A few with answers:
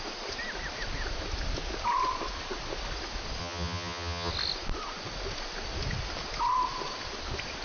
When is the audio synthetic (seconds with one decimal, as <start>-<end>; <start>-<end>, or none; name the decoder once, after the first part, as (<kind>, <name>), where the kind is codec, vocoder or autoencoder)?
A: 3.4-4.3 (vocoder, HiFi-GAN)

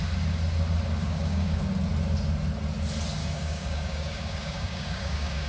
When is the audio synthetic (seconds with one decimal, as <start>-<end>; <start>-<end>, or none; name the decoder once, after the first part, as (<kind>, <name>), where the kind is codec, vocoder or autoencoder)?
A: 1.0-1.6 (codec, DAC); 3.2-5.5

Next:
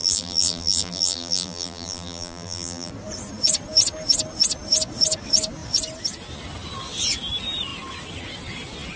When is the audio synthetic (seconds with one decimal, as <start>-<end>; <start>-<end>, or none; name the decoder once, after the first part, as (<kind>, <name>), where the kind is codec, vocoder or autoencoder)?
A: 0.0-2.9 (vocoder, BigVGAN v2)

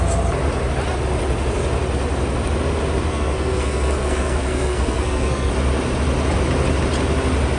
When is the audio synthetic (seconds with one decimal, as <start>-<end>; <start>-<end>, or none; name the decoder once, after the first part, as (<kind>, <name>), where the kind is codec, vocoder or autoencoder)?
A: 3.1-5.5 (codec, SNAC)

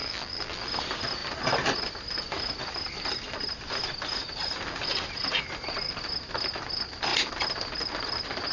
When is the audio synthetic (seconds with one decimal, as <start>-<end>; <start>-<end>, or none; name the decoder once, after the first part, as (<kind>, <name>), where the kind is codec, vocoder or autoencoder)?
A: 0.0-0.7 (vocoder, BigVGAN v2)

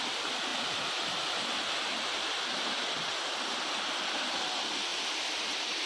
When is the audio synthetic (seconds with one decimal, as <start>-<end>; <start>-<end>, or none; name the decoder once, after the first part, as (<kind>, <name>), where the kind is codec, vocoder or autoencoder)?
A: none

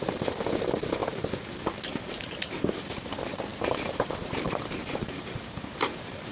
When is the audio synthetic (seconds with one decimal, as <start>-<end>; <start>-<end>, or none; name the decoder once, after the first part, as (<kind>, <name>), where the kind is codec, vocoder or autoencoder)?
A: 0.0-6.3 (vocoder, BigVGAN v2)

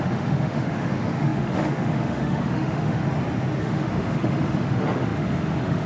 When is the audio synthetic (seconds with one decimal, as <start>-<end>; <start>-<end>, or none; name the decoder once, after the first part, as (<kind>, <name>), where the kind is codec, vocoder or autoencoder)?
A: 0.0-3.0 (autoencoder, DAC-VAE); 3.6-5.9